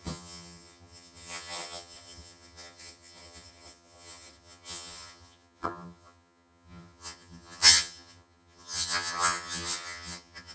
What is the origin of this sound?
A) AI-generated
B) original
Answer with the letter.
A